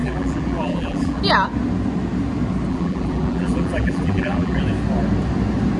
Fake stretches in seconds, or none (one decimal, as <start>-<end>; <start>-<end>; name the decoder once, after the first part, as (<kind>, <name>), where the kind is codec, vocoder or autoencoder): 0.0-1.2 (vocoder, BigVGAN v2); 2.7-4.6